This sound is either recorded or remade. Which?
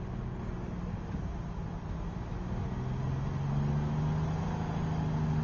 recorded